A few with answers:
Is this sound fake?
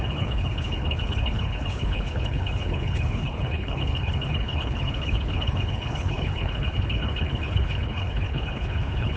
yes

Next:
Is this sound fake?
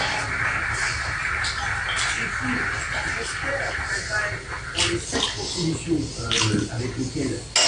no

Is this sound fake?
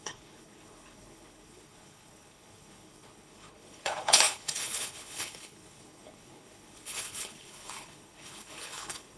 yes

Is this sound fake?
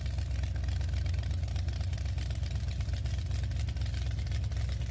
no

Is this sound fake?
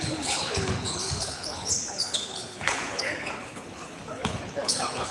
yes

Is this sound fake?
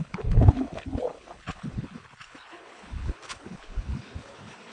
yes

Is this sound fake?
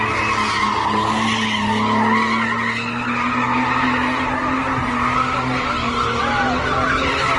no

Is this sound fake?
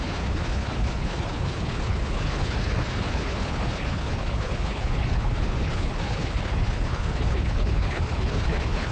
yes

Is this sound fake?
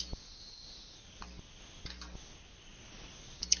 no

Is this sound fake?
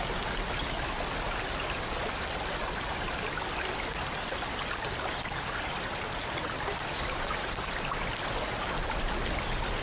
no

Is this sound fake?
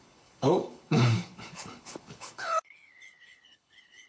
yes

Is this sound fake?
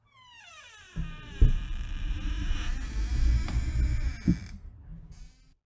no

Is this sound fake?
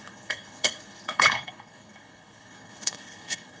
yes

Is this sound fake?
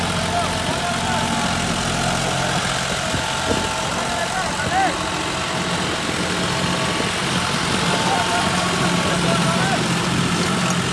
no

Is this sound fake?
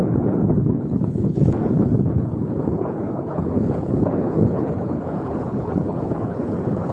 yes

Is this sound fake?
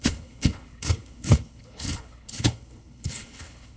yes